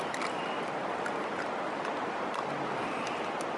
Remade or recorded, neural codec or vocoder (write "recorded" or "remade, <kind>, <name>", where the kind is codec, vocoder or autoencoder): recorded